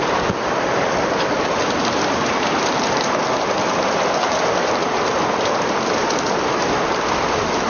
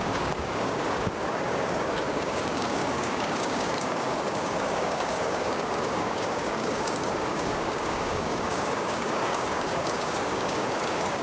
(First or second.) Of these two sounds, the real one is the first